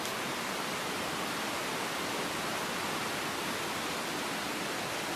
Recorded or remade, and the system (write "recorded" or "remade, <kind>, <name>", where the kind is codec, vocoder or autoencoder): recorded